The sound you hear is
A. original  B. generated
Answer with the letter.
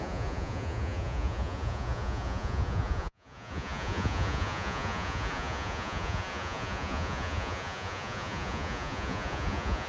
B